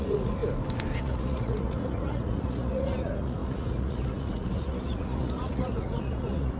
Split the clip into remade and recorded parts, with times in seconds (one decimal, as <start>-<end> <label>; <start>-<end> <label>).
0.0-0.4 remade; 0.4-1.0 recorded; 1.0-6.6 remade